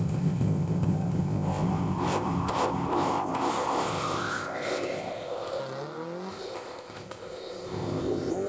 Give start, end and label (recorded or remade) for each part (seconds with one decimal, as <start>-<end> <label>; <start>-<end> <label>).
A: 0.0-5.6 remade; 5.6-6.3 recorded; 6.3-8.5 remade